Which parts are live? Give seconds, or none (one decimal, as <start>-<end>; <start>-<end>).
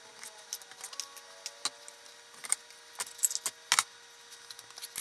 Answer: 0.0-5.0